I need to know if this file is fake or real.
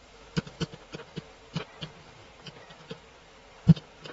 real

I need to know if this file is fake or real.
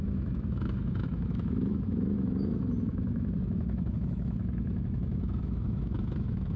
fake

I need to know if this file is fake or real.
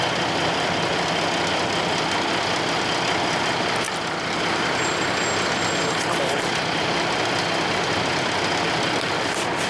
real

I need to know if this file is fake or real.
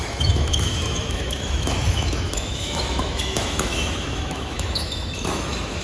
fake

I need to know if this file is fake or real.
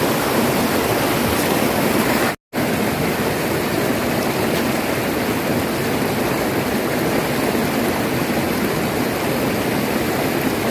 real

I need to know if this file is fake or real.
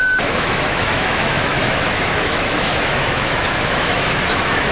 fake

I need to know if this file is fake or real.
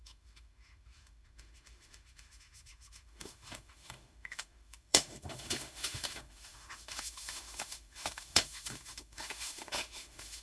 fake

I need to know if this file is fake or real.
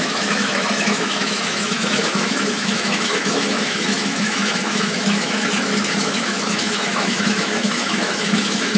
fake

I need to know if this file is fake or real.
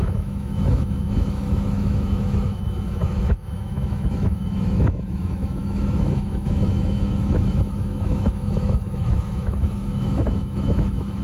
fake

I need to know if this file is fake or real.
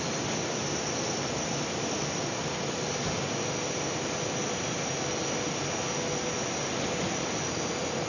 real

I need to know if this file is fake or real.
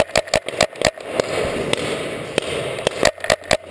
real